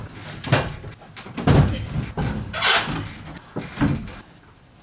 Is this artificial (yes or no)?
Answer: no